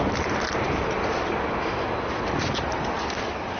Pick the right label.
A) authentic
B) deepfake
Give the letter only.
A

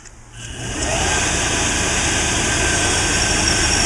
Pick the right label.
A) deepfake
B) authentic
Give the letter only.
B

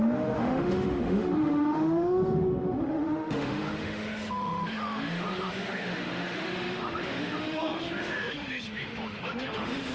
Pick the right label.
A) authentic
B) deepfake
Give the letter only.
B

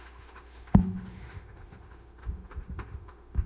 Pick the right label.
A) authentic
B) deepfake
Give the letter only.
B